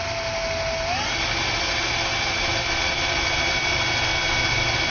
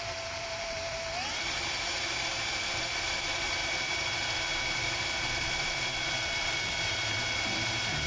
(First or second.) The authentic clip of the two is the first